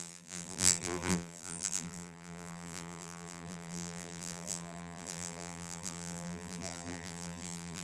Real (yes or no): no